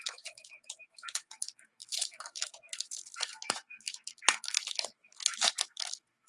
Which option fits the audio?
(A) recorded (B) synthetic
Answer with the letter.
B